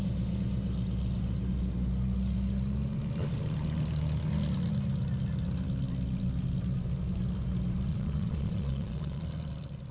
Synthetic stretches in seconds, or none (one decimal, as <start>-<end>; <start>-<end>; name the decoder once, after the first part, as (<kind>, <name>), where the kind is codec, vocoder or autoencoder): 7.9-9.2 (vocoder, Vocos)